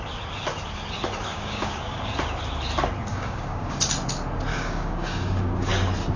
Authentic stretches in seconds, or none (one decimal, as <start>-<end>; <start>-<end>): 0.0-1.3; 2.1-3.1; 3.8-4.5; 5.7-6.2